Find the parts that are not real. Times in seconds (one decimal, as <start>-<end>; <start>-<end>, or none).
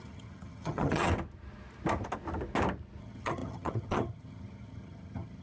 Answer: 0.0-1.1; 3.0-5.4